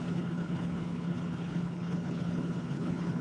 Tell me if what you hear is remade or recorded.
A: remade